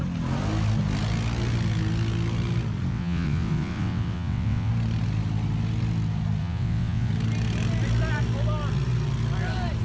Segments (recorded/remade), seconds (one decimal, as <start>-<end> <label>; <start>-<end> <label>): 0.0-2.9 recorded; 2.9-4.7 remade; 4.7-6.4 recorded; 6.4-7.1 remade; 7.1-9.8 recorded